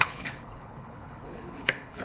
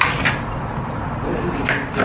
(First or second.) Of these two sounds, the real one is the second